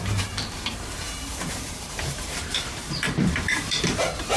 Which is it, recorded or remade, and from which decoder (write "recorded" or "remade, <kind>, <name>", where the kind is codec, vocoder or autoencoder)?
remade, vocoder, BigVGAN v2